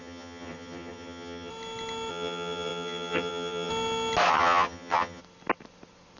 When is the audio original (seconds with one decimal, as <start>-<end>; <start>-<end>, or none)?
1.5-2.1; 3.7-4.3; 5.2-6.2